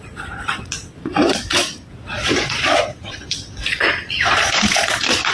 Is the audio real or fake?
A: fake